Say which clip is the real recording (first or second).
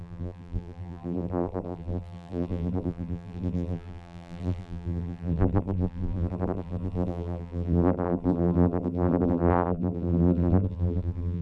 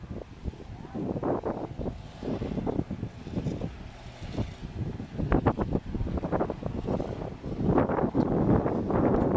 second